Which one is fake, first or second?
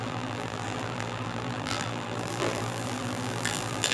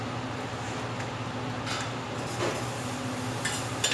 first